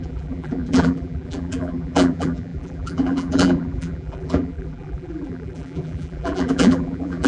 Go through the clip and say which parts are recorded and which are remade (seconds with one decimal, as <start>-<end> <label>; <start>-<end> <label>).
0.0-7.3 remade